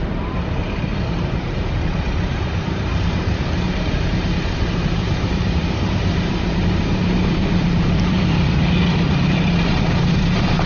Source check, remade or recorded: remade